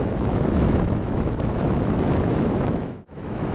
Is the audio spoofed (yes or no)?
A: yes